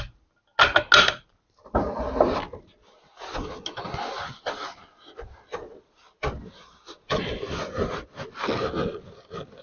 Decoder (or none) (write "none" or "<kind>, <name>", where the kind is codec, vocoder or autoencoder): none